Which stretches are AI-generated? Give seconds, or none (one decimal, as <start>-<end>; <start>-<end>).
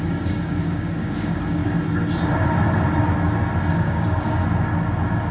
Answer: 0.0-1.6; 3.7-4.4